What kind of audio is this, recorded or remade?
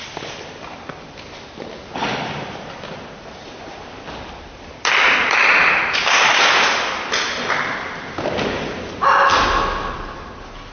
recorded